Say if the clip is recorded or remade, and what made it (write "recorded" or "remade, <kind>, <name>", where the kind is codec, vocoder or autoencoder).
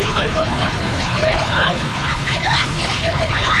remade, codec, HILCodec